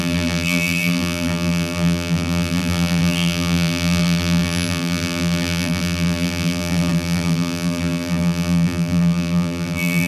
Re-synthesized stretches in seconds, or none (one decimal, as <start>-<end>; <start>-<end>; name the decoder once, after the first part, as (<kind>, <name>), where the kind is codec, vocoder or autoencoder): 0.0-10.1 (vocoder, BigVGAN v2)